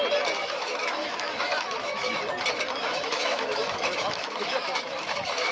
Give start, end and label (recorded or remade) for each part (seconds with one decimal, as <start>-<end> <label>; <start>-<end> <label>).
0.0-0.4 recorded; 0.4-2.2 remade; 2.2-2.8 recorded; 2.8-5.5 remade